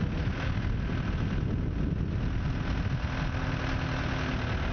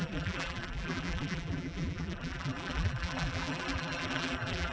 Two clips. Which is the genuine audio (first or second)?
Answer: first